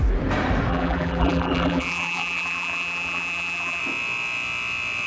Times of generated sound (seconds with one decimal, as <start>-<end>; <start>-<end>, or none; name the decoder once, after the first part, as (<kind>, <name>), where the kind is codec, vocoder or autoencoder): 0.7-3.8 (vocoder, BigVGAN v2)

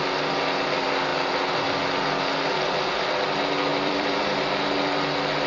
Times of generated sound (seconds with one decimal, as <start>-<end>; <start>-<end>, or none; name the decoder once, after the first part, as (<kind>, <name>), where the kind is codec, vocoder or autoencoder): 3.7-4.7 (vocoder, BigVGAN v2)

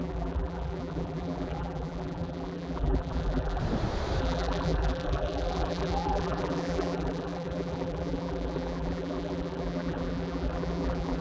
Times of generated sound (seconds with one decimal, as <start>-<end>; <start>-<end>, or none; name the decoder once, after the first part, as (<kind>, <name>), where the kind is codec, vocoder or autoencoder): 0.0-3.6 (vocoder, BigVGAN v2); 4.2-11.2

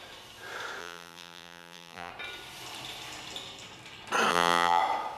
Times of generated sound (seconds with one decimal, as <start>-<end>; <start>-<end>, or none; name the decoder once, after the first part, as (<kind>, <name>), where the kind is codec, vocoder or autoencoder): 0.8-2.1 (vocoder, BigVGAN v2); 4.3-4.8

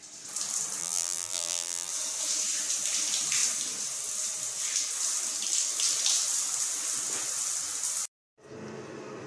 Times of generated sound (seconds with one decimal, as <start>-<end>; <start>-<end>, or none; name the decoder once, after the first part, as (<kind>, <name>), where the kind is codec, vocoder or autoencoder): 0.8-1.9 (vocoder, BigVGAN v2)

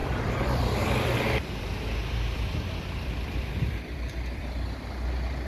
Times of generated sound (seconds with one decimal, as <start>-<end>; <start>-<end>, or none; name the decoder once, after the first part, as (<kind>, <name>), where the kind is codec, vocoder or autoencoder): 0.0-1.6 (vocoder, BigVGAN v2); 2.0-4.4